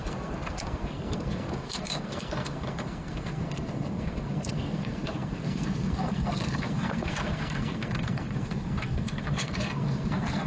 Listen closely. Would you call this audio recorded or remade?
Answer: remade